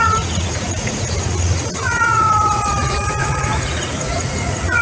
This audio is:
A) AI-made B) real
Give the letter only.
A